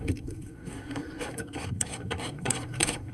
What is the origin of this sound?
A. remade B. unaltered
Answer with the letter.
A